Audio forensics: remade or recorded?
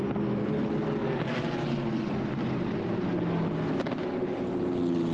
recorded